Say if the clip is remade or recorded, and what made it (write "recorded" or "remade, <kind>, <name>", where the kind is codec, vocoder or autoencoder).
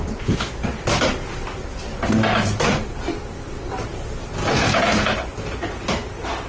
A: recorded